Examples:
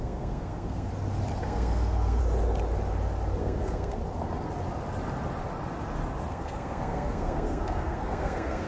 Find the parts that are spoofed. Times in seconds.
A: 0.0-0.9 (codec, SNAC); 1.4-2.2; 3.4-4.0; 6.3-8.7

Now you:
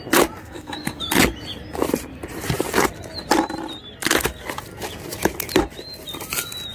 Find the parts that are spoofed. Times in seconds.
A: 0.4-1.0 (codec, SNAC)

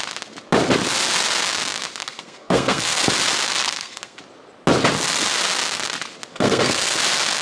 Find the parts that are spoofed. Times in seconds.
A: 2.0-3.0 (codec, SNAC); 3.5-4.2; 6.3-7.0

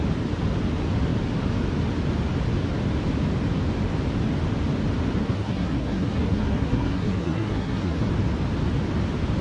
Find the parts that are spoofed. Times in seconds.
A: 5.2-8.1 (codec, SNAC)

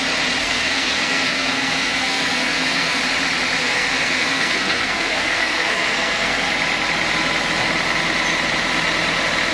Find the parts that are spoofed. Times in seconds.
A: 0.4-3.0 (codec, SNAC); 3.6-6.5

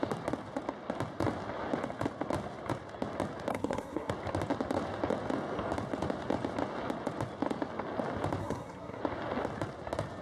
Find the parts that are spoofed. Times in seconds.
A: 3.5-4.1 (codec, SNAC); 8.4-9.0